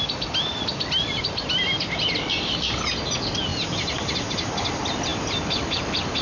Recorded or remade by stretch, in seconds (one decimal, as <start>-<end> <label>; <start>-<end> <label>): 0.0-6.2 recorded